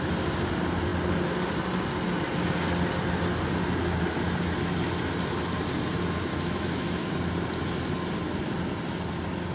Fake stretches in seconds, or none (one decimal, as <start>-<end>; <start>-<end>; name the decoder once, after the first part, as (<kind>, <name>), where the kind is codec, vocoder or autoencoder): 6.3-7.1 (autoencoder, DAC-VAE)